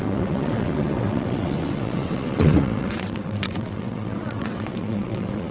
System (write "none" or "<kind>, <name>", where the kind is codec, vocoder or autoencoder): vocoder, WaveNeXt